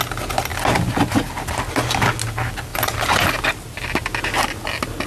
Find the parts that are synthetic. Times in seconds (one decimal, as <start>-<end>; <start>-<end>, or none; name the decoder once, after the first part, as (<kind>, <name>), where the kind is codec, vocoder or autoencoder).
none